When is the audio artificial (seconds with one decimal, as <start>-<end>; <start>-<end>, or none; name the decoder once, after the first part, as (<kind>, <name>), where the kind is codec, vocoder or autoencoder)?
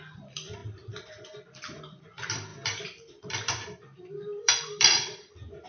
0.0-0.6 (vocoder, BigVGAN v2); 1.1-5.7